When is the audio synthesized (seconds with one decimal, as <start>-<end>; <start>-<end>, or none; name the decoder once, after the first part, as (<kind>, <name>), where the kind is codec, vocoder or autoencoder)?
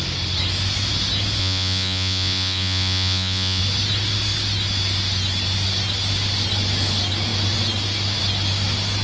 1.4-3.6 (vocoder, Vocos)